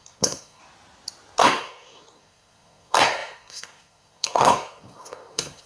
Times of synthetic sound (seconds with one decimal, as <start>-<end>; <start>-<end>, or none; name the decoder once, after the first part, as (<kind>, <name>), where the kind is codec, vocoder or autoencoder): 0.0-0.6 (codec, SNAC); 1.4-5.7